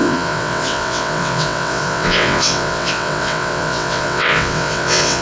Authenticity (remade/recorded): remade